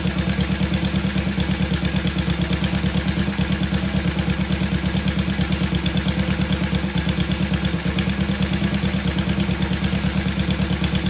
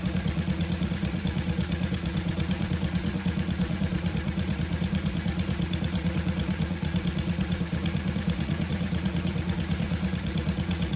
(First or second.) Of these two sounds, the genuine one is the first